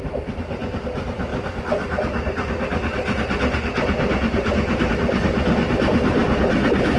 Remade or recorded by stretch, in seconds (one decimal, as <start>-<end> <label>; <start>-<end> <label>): 0.0-7.0 recorded